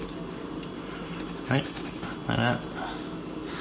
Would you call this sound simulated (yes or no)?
no